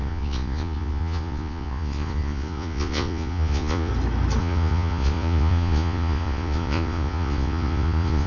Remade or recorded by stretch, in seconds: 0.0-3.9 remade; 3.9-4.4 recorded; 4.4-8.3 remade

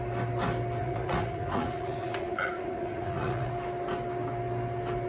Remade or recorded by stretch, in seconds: 0.0-0.8 recorded; 0.8-3.5 remade; 3.5-5.1 recorded

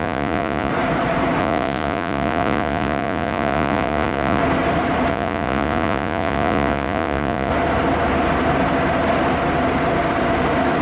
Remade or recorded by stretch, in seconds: 0.0-0.7 remade; 0.7-1.4 recorded; 1.4-4.4 remade; 4.4-5.1 recorded; 5.1-7.5 remade; 7.5-10.8 recorded